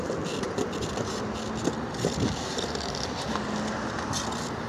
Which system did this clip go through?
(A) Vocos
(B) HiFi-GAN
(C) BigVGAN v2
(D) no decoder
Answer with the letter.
D